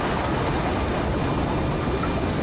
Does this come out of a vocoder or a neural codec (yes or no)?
no